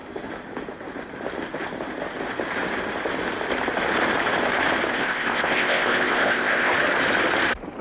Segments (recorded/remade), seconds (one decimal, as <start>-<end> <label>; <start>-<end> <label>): 0.0-4.9 recorded; 4.9-6.7 remade; 6.7-7.8 recorded